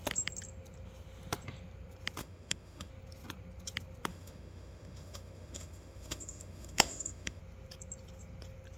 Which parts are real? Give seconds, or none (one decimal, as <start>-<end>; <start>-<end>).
0.0-2.2; 2.9-4.1; 7.4-8.8